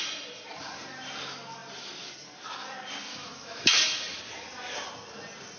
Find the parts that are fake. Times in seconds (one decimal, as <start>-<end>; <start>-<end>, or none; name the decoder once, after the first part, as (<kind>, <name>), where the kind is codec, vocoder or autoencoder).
3.1-4.2 (autoencoder, DAC-VAE)

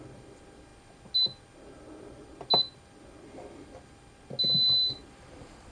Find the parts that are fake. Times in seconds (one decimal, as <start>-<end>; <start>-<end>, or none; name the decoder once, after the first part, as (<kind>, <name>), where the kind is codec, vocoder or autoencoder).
none

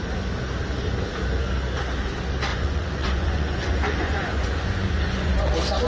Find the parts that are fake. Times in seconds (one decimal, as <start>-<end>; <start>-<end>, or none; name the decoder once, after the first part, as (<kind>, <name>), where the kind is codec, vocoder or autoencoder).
2.5-5.5 (vocoder, Vocos)